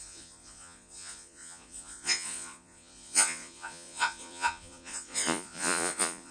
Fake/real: fake